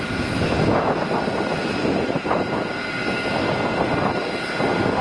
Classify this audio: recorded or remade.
recorded